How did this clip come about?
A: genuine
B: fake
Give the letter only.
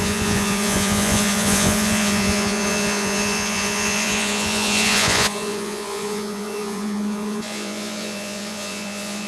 B